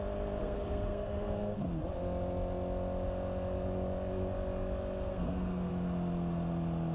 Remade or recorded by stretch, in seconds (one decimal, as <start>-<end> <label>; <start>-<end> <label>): 0.0-0.4 recorded; 0.4-1.6 remade; 1.6-5.1 recorded; 5.1-5.7 remade; 5.7-6.9 recorded